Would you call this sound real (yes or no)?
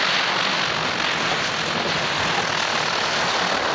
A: yes